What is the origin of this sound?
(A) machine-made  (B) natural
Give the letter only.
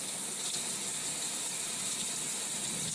B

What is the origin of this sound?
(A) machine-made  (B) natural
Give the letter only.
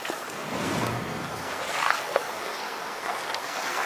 A